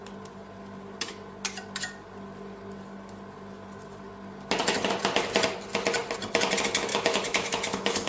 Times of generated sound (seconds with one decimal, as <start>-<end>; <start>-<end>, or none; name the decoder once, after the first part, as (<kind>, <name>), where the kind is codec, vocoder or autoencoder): 6.9-8.1 (autoencoder, DAC-VAE)